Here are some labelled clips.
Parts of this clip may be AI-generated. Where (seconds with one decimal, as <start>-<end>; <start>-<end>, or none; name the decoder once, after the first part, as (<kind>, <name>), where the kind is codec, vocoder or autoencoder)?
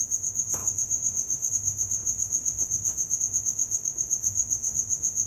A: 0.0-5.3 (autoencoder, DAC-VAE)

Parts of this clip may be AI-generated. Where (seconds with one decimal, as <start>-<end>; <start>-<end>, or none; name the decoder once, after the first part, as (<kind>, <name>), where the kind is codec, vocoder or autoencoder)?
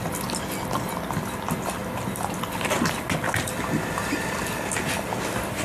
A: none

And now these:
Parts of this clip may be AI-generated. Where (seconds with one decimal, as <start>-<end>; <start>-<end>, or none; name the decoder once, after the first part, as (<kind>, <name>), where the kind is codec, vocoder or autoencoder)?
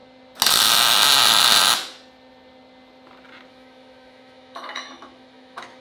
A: 3.5-5.8 (autoencoder, DAC-VAE)